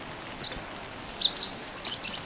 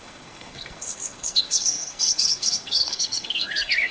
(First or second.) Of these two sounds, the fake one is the second